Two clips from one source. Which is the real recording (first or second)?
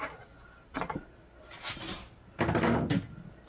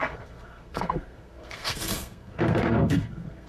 first